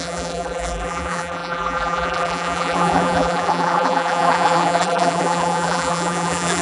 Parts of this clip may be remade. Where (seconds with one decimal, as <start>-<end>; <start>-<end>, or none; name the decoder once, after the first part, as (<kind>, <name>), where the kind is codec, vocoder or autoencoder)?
0.0-6.6 (vocoder, BigVGAN v2)